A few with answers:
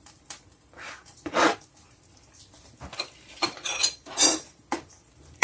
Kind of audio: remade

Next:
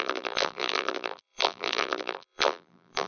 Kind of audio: remade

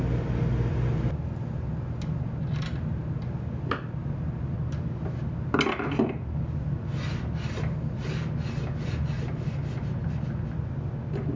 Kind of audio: recorded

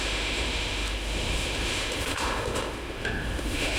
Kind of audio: remade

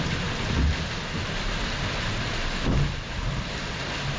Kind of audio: recorded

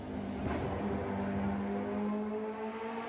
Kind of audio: recorded